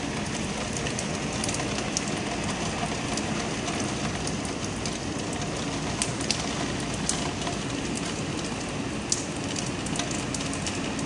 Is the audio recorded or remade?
recorded